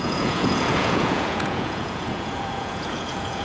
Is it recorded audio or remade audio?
remade